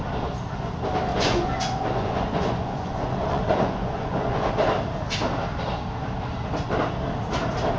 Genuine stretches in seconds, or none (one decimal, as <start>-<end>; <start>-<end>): 0.0-1.1; 4.5-7.8